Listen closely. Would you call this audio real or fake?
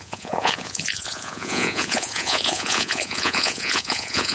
fake